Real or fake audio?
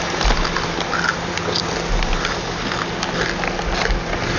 real